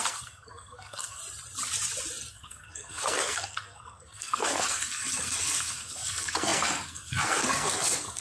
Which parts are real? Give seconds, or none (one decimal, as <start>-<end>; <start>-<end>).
1.2-2.3